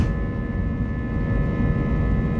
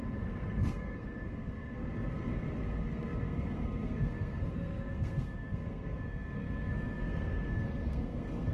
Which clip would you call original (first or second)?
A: first